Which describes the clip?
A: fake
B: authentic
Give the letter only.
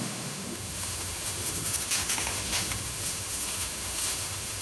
A